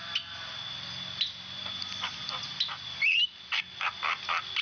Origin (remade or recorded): recorded